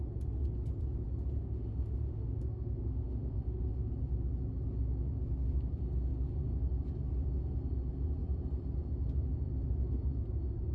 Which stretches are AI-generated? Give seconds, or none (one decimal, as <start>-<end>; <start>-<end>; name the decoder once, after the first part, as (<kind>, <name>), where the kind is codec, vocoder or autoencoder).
1.4-3.9 (autoencoder, DAC-VAE)